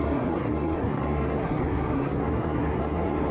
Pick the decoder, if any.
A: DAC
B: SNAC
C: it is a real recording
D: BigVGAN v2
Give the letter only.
B